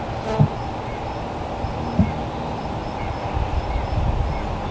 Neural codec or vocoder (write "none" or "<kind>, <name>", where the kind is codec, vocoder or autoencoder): none